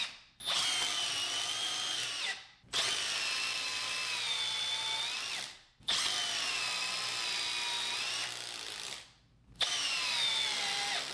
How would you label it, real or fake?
real